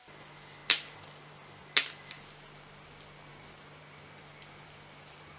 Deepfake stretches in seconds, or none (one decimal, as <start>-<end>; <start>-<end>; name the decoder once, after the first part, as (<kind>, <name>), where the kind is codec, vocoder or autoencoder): none